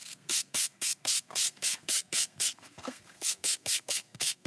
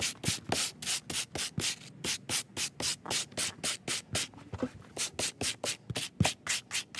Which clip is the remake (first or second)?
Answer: first